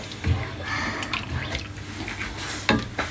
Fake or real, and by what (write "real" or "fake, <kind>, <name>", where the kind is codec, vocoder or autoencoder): real